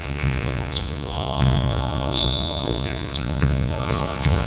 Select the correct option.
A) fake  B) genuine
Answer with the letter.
A